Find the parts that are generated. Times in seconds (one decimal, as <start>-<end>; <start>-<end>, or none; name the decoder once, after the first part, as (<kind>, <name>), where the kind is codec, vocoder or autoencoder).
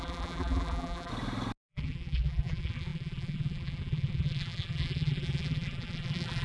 0.0-1.1 (vocoder, BigVGAN v2); 1.7-6.4